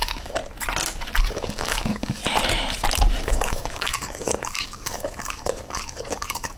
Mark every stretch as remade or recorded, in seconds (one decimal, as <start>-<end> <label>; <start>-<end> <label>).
0.0-0.4 remade; 0.4-1.2 recorded; 1.2-2.2 remade; 2.2-3.2 recorded; 3.2-6.6 remade